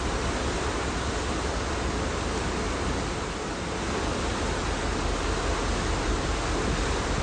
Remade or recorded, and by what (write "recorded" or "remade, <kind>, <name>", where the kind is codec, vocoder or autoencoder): recorded